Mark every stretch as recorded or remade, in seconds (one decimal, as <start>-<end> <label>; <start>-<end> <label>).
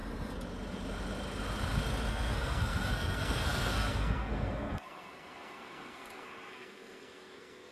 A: 0.0-2.1 recorded; 2.1-7.7 remade